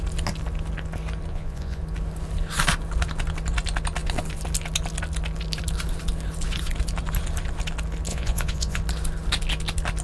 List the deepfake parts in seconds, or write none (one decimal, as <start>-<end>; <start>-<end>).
1.3-1.8; 8.1-8.8